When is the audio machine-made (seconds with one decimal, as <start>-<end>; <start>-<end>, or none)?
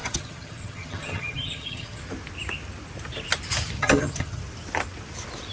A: 0.0-2.0; 3.8-4.4